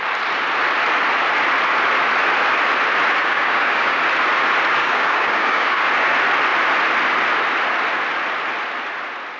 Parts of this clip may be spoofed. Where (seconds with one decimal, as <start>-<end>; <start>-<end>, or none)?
3.2-4.0; 4.8-5.9